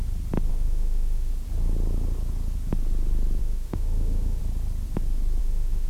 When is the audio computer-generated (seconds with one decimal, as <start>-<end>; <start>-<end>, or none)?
0.5-1.3; 3.4-4.4; 5.4-5.9